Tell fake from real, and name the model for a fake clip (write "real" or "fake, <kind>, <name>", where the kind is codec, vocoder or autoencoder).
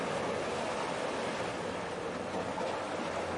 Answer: real